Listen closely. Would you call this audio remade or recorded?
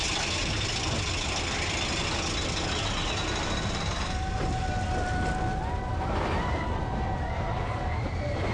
recorded